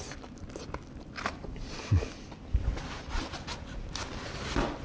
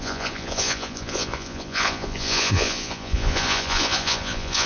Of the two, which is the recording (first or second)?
first